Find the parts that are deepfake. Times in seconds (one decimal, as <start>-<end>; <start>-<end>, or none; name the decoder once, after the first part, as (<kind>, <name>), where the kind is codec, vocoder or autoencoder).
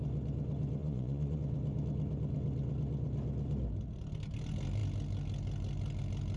0.8-1.4 (vocoder, Vocos)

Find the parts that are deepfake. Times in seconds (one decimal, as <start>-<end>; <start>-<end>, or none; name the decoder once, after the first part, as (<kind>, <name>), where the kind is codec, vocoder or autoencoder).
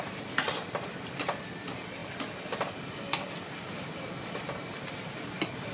none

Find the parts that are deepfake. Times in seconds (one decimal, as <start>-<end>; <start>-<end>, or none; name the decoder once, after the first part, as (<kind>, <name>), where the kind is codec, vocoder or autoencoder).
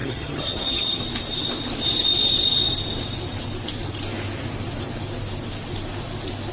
0.0-1.0 (vocoder, HiFi-GAN)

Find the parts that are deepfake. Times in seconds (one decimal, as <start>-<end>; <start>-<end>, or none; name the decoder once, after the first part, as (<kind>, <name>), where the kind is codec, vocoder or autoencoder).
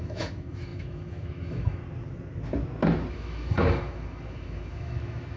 0.0-1.8 (autoencoder, DAC-VAE); 3.1-5.4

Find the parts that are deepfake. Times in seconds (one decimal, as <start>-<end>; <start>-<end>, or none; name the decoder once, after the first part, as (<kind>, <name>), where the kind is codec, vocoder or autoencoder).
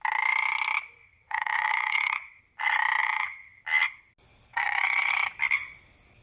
1.0-2.4 (vocoder, WaveNeXt); 3.0-3.6; 4.5-5.1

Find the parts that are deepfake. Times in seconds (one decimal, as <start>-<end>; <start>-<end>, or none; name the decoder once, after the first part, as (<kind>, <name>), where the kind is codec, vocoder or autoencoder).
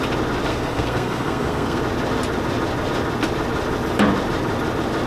0.5-1.8 (codec, SNAC)